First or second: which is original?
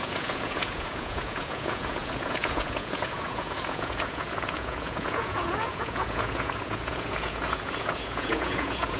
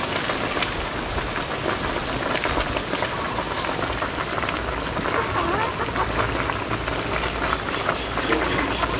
second